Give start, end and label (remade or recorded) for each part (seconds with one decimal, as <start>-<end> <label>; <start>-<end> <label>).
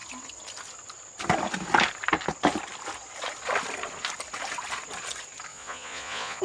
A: 0.0-5.5 recorded; 5.5-6.4 remade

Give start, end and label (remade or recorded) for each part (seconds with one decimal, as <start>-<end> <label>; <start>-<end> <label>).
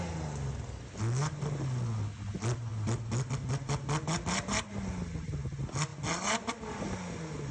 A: 0.0-7.5 recorded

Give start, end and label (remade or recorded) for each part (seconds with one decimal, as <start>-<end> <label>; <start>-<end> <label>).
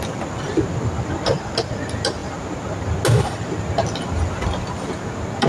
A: 0.0-5.5 recorded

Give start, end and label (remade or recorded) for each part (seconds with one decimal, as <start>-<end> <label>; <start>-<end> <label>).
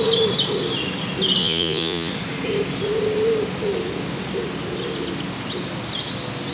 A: 0.0-1.4 recorded; 1.4-2.1 remade; 2.1-6.5 recorded